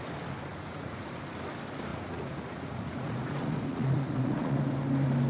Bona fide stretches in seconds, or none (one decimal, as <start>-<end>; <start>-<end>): 0.0-0.5; 1.1-1.9; 4.6-5.3